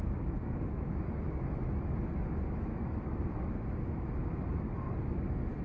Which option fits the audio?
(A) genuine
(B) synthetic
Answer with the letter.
B